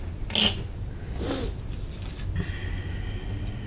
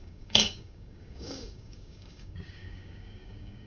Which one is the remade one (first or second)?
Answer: second